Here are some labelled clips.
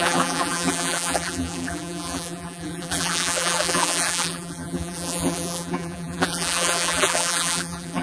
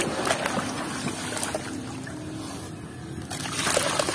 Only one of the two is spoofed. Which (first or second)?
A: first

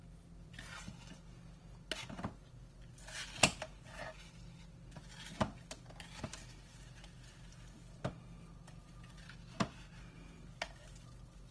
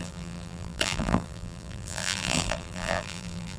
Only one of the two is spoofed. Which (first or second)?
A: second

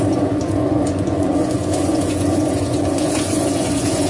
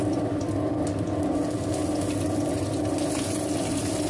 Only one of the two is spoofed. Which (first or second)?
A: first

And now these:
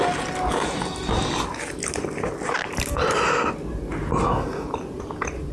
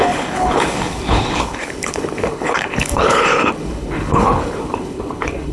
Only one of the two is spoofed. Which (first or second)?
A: second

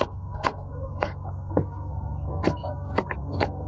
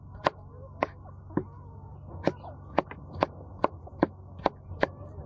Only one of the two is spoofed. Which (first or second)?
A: first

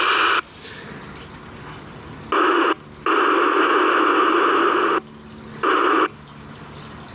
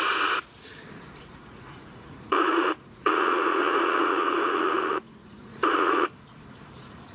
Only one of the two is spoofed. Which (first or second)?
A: second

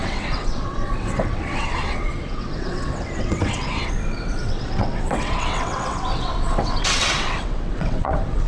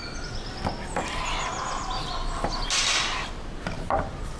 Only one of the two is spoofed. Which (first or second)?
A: first